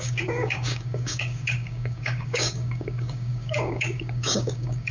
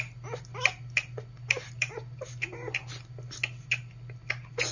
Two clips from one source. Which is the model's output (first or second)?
first